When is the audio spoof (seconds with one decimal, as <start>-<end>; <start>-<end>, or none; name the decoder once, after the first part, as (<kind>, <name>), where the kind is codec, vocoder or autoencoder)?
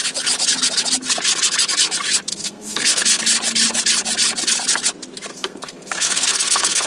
2.3-3.2 (codec, SNAC); 5.3-6.9